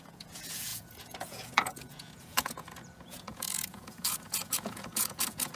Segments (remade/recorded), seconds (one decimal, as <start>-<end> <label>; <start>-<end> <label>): 0.0-5.6 remade

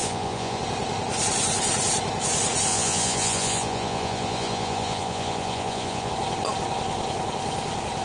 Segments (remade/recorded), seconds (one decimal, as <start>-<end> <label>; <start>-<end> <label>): 0.0-0.6 remade; 0.6-2.7 recorded; 2.7-6.1 remade; 6.1-8.0 recorded

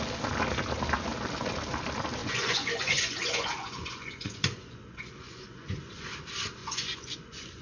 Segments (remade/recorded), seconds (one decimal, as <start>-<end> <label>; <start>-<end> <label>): 0.0-2.2 recorded; 2.2-6.1 remade; 6.1-6.6 recorded; 6.6-7.6 remade

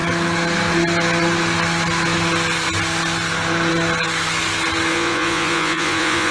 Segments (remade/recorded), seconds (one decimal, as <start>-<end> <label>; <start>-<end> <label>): 0.0-4.9 recorded; 4.9-6.3 remade

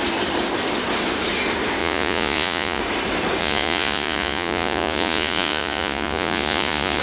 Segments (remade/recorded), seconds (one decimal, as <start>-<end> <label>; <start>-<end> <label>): 0.0-1.8 recorded; 1.8-2.8 remade; 2.8-3.4 recorded; 3.4-7.0 remade

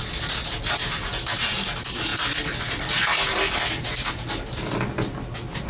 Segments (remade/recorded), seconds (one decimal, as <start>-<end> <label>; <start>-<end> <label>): 0.0-5.7 recorded